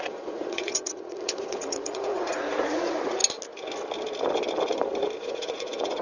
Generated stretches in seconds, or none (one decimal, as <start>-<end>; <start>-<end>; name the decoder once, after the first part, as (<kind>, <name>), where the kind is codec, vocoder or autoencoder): 0.0-3.2 (vocoder, Vocos); 5.2-6.0